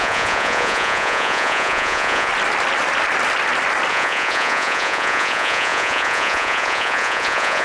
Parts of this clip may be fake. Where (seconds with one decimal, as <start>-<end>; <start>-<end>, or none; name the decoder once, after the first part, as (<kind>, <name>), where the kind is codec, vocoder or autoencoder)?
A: 0.0-2.3 (vocoder, Vocos); 3.9-7.6